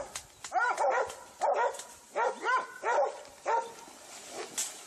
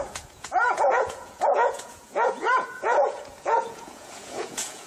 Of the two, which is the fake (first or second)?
second